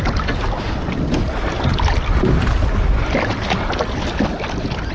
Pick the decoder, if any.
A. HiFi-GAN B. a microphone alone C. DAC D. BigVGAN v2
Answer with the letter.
B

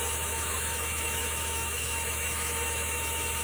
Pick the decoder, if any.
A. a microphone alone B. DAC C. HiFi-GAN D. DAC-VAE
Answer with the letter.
D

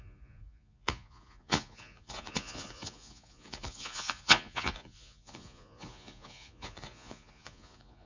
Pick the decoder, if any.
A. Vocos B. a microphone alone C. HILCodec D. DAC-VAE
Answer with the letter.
A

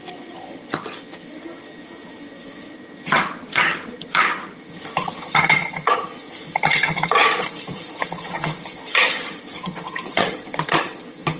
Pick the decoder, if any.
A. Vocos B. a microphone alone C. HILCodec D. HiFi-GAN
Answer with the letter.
D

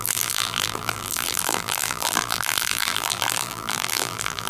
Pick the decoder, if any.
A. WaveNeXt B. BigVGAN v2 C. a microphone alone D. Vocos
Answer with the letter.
B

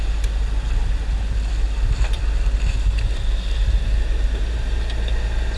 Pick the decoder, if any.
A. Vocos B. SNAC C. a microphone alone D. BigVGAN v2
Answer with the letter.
C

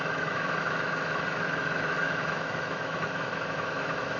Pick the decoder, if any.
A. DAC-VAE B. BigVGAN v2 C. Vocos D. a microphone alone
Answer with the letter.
A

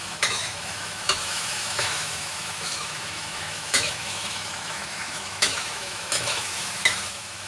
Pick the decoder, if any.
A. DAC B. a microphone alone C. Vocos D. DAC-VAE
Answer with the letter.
D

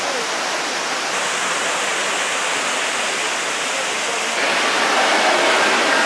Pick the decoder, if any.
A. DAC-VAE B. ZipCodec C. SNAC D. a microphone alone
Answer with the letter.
D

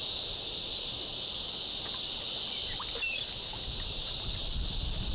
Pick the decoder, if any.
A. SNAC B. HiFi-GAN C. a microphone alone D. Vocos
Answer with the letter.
C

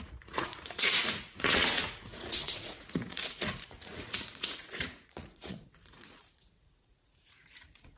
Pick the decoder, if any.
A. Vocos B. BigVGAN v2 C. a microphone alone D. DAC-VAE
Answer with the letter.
A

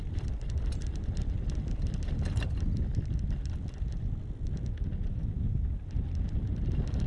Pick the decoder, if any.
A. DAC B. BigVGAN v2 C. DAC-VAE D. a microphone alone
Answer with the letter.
D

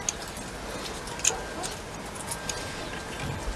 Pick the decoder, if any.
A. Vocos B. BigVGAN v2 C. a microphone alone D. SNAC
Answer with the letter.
C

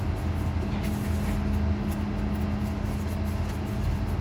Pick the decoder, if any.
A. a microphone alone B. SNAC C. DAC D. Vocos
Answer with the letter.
A